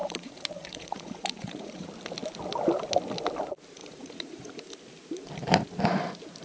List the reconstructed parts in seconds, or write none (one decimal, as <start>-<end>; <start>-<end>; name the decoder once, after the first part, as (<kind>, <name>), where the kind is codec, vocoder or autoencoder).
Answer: 0.0-1.9 (vocoder, Vocos); 3.8-4.6

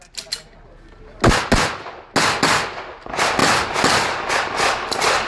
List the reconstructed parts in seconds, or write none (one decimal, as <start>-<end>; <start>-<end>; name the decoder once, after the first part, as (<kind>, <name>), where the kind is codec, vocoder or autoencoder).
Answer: none

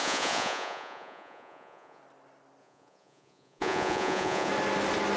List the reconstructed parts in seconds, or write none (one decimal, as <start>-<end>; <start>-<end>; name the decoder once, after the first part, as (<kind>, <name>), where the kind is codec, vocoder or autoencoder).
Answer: 0.0-2.0 (vocoder, Vocos); 2.6-4.5

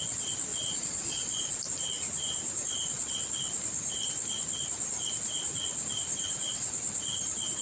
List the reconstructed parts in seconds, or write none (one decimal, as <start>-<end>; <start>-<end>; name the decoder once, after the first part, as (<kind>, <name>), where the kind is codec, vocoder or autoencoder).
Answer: 0.5-1.6 (vocoder, Vocos)

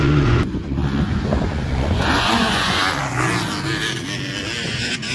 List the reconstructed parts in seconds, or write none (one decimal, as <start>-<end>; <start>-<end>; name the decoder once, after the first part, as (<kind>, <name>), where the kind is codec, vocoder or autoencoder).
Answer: 0.0-2.8 (vocoder, Vocos); 4.6-5.1

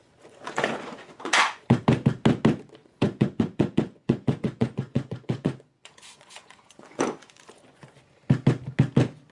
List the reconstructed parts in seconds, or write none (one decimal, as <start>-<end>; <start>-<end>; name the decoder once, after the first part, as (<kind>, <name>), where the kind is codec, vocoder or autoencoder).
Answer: 0.0-1.8 (vocoder, Vocos); 2.8-8.1

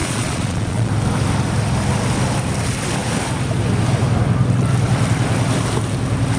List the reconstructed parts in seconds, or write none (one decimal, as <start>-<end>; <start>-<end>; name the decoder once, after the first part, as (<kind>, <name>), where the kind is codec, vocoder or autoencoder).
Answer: 0.0-0.9 (vocoder, Vocos)

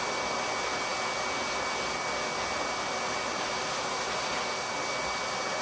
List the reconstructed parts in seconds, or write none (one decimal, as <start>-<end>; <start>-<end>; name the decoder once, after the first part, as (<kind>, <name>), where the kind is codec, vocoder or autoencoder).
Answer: none